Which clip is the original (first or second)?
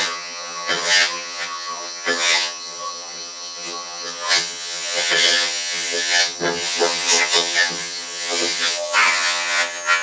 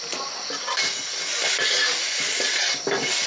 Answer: second